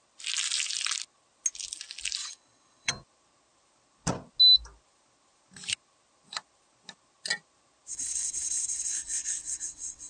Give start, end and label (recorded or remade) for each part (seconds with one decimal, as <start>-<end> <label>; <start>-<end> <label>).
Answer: 0.0-2.2 recorded; 2.2-2.9 remade; 2.9-7.9 recorded; 7.9-10.1 remade

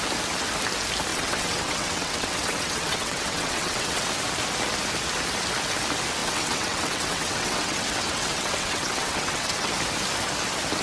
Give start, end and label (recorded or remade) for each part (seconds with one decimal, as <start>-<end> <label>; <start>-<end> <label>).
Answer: 0.0-1.1 recorded; 1.1-4.1 remade; 4.1-6.2 recorded; 6.2-9.7 remade; 9.7-10.8 recorded

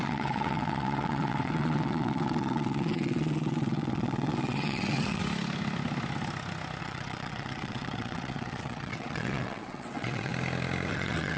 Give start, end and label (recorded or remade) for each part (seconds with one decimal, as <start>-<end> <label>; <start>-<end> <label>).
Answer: 0.0-5.2 remade; 5.2-6.8 recorded; 6.8-10.3 remade; 10.3-10.9 recorded; 10.9-11.4 remade

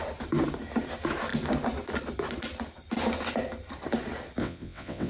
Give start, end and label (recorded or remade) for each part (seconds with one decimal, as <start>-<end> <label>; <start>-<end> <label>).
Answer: 0.0-4.4 recorded; 4.4-5.1 remade

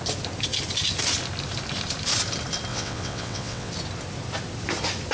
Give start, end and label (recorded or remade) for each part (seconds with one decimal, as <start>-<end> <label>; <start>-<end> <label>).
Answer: 0.0-2.7 recorded; 2.7-3.7 remade; 3.7-5.1 recorded

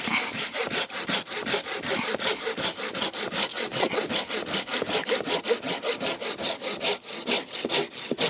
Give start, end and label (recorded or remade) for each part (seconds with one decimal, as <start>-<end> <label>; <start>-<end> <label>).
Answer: 0.0-3.5 recorded; 3.5-4.1 remade; 4.1-8.3 recorded

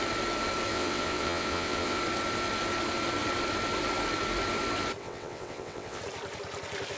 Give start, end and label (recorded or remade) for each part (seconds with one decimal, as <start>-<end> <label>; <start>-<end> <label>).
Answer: 0.0-0.7 recorded; 0.7-2.0 remade; 2.0-5.0 recorded; 5.0-6.0 remade; 6.0-7.0 recorded